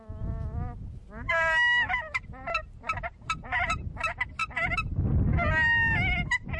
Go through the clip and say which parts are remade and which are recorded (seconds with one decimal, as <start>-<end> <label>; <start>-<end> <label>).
0.0-6.6 recorded